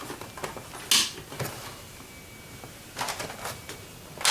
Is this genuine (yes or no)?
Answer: yes